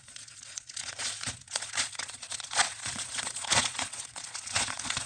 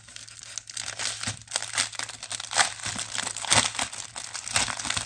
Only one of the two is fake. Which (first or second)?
first